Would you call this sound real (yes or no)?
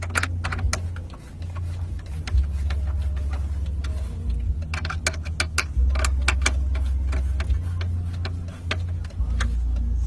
yes